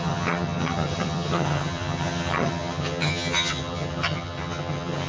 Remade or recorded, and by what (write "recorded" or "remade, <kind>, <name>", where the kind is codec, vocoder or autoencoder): remade, vocoder, HiFi-GAN